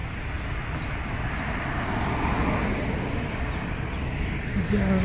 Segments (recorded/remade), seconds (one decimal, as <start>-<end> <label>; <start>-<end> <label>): 0.0-5.0 recorded